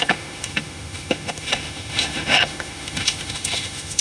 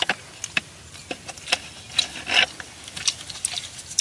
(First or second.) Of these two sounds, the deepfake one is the first